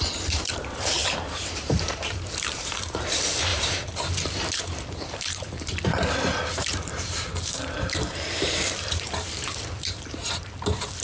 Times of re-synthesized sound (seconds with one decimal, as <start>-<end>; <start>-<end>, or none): 0.0-11.0